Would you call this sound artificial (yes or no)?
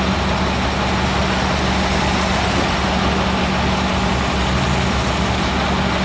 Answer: no